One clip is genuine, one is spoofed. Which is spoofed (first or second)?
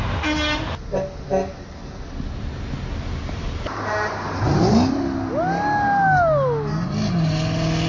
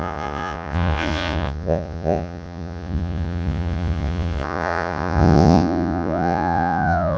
second